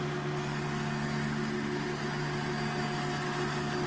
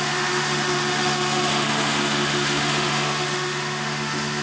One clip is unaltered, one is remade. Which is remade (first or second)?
second